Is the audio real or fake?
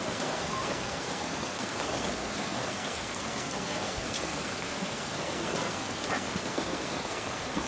fake